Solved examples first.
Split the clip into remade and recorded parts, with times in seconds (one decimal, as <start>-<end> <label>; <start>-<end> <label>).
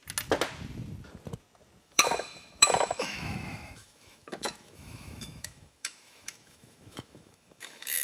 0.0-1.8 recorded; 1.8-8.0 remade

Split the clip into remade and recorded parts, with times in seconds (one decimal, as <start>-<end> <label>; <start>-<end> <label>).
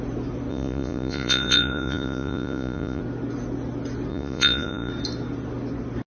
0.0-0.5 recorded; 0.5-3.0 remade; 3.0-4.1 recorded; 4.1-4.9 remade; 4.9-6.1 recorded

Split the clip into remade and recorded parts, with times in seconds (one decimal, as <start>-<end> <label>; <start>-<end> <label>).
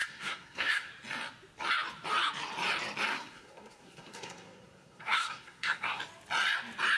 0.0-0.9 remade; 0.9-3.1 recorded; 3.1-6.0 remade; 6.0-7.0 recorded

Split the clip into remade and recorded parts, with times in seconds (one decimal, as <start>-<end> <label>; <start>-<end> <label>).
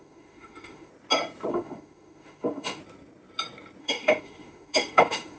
0.0-0.9 remade; 0.9-1.5 recorded; 1.5-2.8 remade; 2.8-3.8 recorded; 3.8-5.4 remade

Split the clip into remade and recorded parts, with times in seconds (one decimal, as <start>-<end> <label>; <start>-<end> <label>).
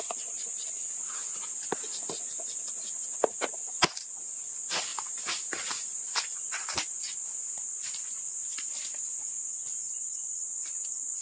0.0-4.9 recorded; 4.9-9.2 remade; 9.2-9.8 recorded; 9.8-11.2 remade